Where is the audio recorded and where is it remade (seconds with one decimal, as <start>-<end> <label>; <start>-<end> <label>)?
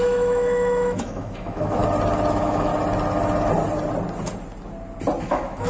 0.0-1.8 remade; 1.8-2.3 recorded; 2.3-2.7 remade; 2.7-5.2 recorded; 5.2-5.7 remade